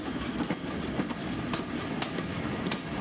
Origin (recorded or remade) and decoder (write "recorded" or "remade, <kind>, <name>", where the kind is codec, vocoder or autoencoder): recorded